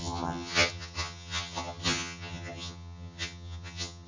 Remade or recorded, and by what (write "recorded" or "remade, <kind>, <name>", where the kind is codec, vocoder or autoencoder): remade, vocoder, HiFi-GAN